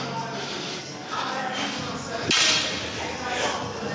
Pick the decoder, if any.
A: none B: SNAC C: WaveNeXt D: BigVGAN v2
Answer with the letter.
A